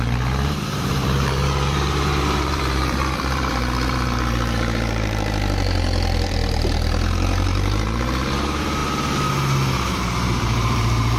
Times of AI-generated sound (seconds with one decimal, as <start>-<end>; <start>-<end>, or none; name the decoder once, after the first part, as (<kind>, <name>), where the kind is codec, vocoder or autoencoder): 0.0-8.8 (vocoder, BigVGAN v2); 9.9-11.2

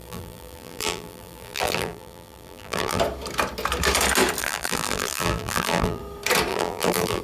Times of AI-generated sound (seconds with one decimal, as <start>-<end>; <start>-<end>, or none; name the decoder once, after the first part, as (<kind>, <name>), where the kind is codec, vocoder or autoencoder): 0.0-3.0 (vocoder, BigVGAN v2); 4.4-6.0; 6.5-7.2

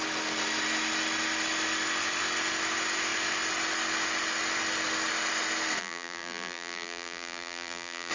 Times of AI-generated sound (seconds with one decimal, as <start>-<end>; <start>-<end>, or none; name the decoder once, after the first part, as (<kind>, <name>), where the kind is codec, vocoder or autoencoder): 5.8-8.1 (vocoder, BigVGAN v2)

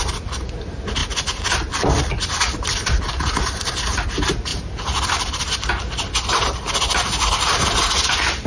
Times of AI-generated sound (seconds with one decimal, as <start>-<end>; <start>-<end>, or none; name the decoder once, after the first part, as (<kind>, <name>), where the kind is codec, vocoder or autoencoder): none